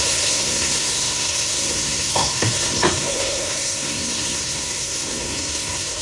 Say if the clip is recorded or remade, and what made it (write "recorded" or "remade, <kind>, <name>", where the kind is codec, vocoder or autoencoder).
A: remade, codec, SNAC